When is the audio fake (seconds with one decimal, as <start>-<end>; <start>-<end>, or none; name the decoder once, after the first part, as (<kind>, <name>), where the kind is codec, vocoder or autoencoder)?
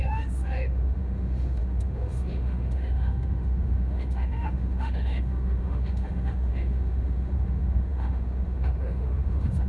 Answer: 0.0-9.7 (autoencoder, DAC-VAE)